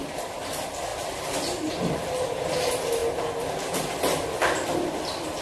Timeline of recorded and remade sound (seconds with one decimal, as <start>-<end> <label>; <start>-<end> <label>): 0.0-5.4 recorded